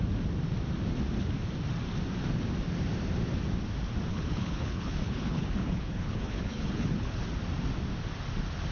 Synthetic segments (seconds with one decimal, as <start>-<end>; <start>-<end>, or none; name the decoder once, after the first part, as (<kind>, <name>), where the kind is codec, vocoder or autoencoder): 4.1-7.2 (codec, HILCodec)